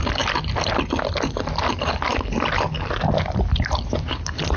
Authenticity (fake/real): real